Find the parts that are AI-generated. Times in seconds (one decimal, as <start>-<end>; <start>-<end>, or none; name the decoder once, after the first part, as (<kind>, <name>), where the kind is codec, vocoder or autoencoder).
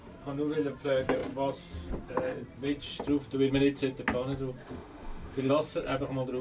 4.6-5.5 (autoencoder, DAC-VAE)